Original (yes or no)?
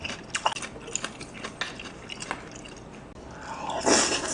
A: yes